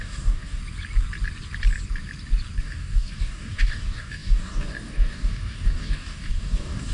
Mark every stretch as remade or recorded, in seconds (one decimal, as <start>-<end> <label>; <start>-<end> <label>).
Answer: 0.0-0.6 remade; 0.6-2.6 recorded; 2.6-6.9 remade